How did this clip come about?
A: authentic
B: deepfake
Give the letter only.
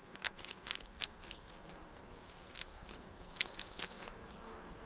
B